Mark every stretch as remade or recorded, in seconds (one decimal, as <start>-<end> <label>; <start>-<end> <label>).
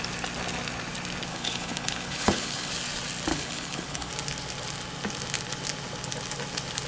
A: 0.0-1.3 recorded; 1.3-2.7 remade; 2.7-3.3 recorded; 3.3-4.1 remade; 4.1-6.9 recorded